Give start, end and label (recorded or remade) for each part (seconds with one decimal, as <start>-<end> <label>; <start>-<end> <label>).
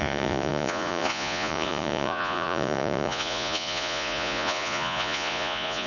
0.0-5.9 remade